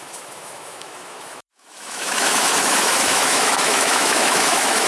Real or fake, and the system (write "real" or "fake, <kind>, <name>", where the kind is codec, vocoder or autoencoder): fake, autoencoder, DAC-VAE